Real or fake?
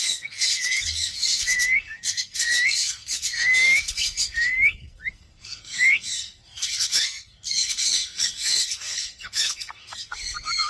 fake